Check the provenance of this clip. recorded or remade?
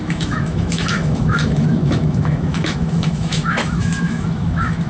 remade